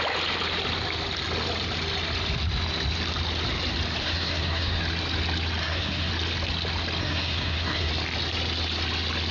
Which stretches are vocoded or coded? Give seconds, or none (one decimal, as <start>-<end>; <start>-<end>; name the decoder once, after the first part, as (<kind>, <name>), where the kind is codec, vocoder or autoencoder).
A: 4.0-4.8 (codec, SNAC); 5.6-6.1; 7.0-7.9